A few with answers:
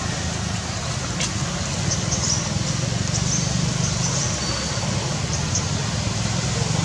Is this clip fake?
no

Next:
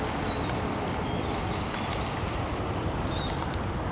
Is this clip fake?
no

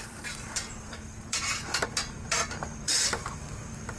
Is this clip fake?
yes